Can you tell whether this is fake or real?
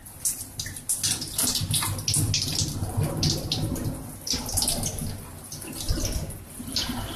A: real